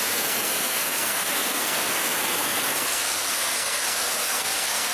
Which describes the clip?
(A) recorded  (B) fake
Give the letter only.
B